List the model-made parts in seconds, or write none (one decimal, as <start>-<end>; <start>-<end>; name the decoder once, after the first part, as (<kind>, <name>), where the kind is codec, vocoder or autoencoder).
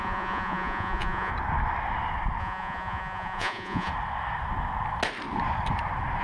0.0-1.3 (vocoder, Vocos); 2.4-3.9